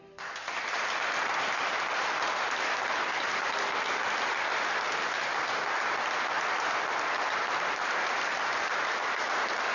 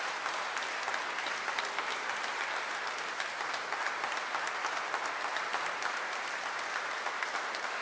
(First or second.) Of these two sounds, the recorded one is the second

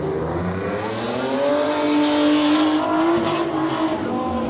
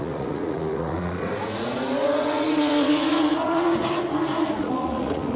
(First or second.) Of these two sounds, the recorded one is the first